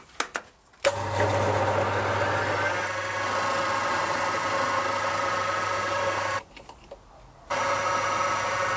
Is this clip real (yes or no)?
yes